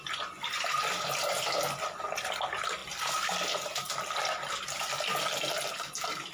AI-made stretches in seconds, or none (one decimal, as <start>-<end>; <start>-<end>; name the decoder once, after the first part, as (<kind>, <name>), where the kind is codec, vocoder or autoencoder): 2.8-5.2 (vocoder, BigVGAN v2)